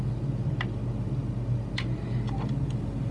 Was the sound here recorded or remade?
recorded